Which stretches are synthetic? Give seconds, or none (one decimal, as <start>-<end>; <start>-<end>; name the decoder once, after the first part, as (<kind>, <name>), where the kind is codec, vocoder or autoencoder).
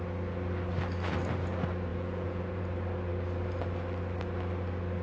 1.9-2.6 (vocoder, Vocos)